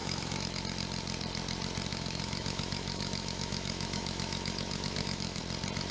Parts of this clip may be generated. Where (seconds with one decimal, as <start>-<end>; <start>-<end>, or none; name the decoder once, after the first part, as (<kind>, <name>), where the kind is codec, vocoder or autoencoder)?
0.0-0.6 (autoencoder, DAC-VAE); 1.9-5.4